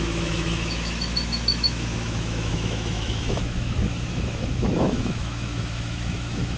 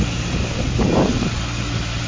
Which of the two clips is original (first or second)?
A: second